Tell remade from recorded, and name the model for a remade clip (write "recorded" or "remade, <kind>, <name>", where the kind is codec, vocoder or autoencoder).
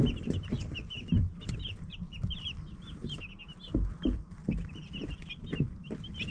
remade, vocoder, BigVGAN v2